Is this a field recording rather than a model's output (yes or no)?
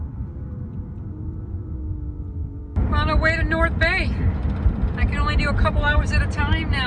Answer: yes